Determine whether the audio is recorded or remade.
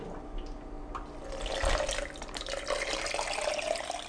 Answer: recorded